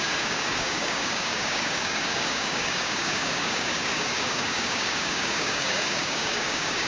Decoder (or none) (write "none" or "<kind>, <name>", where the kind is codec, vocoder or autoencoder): codec, DAC